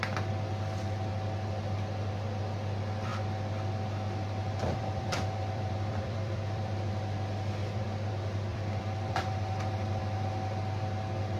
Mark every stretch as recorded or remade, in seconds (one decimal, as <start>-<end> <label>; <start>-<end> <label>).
0.0-3.1 recorded; 3.1-8.1 remade; 8.1-8.5 recorded; 8.5-10.0 remade; 10.0-11.4 recorded